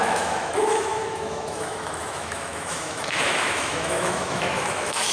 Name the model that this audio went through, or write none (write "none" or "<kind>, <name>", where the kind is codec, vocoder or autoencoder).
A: autoencoder, DAC-VAE